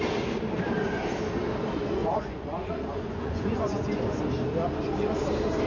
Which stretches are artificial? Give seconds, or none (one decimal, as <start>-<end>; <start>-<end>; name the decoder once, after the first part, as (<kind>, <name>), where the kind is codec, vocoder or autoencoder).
2.0-4.2 (vocoder, Vocos)